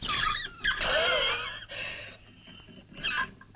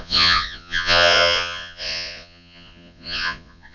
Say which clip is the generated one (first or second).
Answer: second